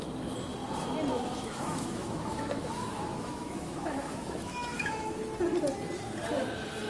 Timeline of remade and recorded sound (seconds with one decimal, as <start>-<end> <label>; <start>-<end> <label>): 0.0-1.1 recorded; 1.1-5.2 remade; 5.2-6.9 recorded